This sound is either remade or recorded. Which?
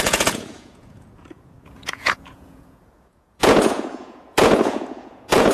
remade